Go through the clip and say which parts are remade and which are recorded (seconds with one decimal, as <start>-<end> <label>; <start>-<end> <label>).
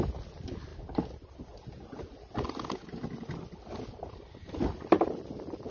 0.0-5.7 recorded